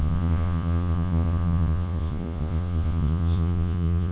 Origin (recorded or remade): remade